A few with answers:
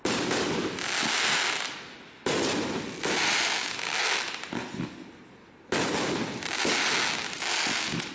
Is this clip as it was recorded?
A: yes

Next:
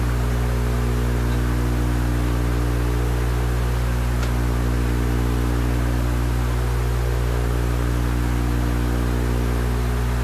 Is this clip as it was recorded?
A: yes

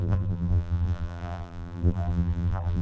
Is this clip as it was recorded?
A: no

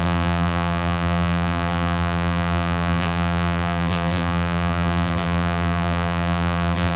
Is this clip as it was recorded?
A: no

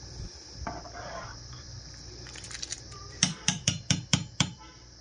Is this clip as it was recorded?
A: no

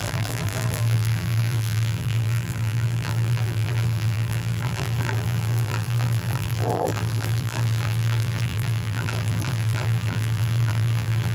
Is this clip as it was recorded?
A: no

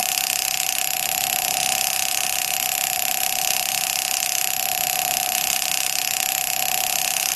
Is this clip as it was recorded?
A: yes